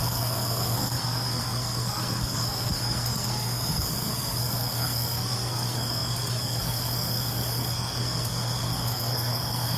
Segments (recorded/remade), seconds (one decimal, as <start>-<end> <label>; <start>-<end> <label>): 0.0-9.8 remade